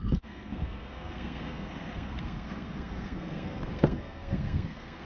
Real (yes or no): no